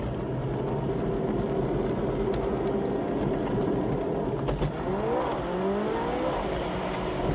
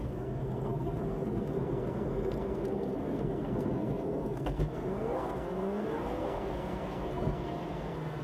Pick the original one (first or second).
first